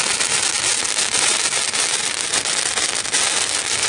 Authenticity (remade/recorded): recorded